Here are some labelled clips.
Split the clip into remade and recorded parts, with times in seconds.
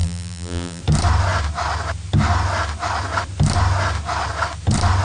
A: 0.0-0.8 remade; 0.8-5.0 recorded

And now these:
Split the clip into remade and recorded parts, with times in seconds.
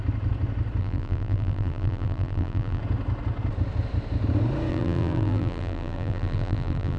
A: 0.0-0.8 recorded; 0.8-2.8 remade; 2.8-4.7 recorded; 4.7-7.0 remade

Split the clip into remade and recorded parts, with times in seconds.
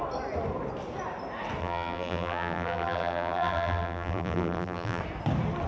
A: 0.0-1.6 recorded; 1.6-5.0 remade; 5.0-5.7 recorded